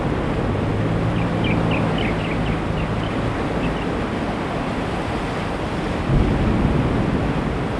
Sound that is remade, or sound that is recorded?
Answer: recorded